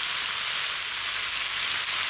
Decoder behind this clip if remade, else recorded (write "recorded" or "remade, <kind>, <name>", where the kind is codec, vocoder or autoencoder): recorded